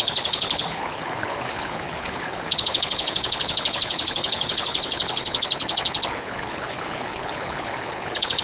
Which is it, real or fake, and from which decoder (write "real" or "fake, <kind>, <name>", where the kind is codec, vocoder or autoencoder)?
fake, codec, HILCodec